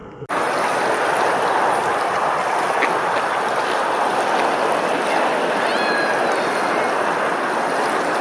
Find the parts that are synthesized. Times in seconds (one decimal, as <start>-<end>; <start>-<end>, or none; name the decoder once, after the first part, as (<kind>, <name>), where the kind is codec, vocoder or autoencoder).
none